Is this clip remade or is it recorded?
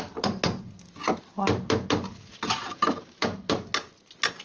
recorded